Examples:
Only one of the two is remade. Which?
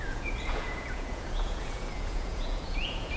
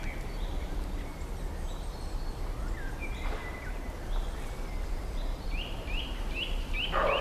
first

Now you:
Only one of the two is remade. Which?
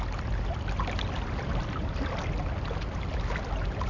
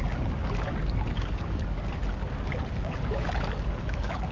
second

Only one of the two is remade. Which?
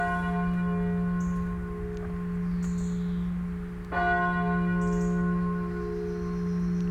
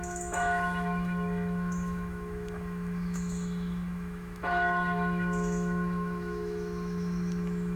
second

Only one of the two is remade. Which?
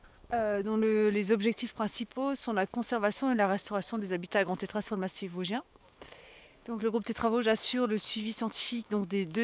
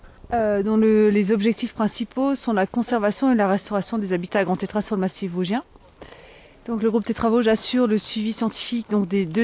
first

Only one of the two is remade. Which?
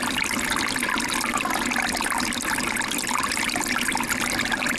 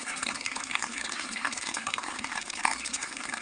second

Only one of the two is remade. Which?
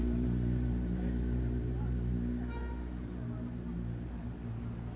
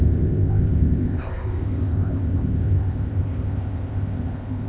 second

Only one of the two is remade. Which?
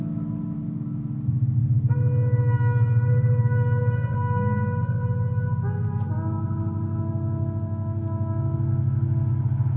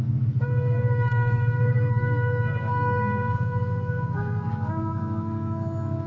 second